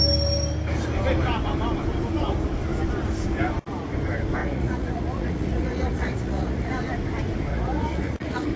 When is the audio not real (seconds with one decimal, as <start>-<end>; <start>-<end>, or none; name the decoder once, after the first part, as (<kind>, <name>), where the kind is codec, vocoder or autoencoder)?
4.4-6.7 (vocoder, Vocos); 7.5-8.6